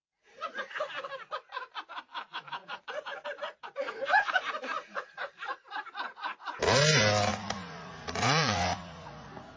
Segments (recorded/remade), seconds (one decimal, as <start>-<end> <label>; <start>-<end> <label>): 0.0-0.9 remade; 0.9-2.6 recorded; 2.6-6.6 remade; 6.6-7.3 recorded; 7.3-9.6 remade